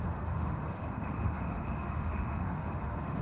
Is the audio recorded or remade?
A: remade